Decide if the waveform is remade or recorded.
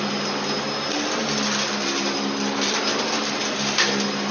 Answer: recorded